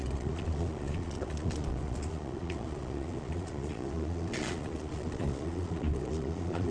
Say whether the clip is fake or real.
fake